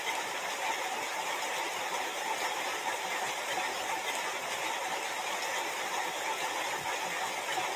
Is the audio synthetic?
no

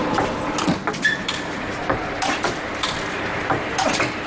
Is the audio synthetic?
yes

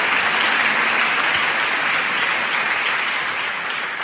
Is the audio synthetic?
no